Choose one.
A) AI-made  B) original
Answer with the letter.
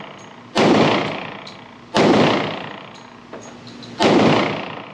B